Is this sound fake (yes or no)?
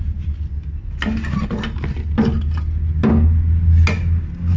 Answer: no